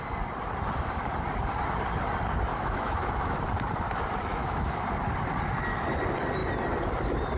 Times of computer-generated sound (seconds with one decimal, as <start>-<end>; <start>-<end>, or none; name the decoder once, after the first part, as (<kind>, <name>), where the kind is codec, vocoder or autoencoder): 2.5-3.4 (autoencoder, DAC-VAE); 4.3-4.8